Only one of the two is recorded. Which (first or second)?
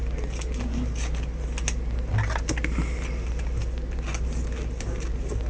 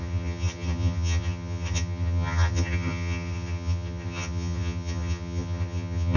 first